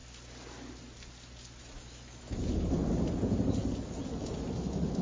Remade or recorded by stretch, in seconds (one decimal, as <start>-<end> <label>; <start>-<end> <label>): 0.0-1.6 recorded; 1.6-2.8 remade; 2.8-4.0 recorded; 4.0-5.0 remade